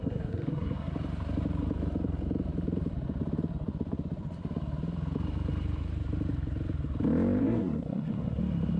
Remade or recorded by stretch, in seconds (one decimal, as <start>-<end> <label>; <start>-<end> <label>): 0.0-0.9 remade; 0.9-7.4 recorded; 7.4-8.4 remade; 8.4-8.8 recorded